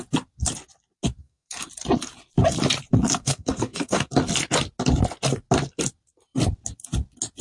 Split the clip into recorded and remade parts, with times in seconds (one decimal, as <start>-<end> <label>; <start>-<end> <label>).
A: 0.0-1.2 recorded; 1.2-1.7 remade; 1.7-3.2 recorded; 3.2-4.1 remade; 4.1-7.4 recorded